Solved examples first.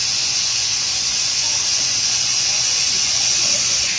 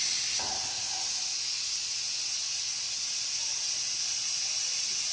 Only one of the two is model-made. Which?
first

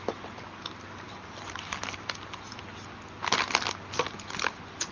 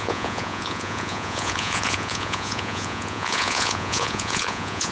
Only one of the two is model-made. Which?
second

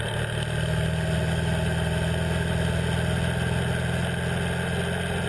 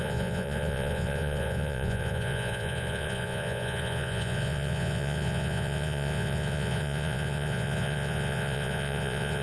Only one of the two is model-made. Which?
second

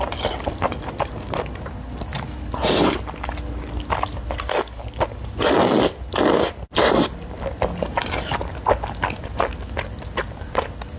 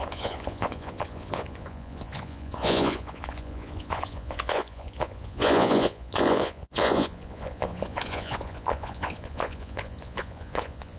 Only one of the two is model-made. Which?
second